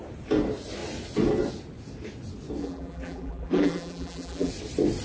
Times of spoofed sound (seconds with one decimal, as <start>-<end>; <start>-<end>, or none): 2.6-4.5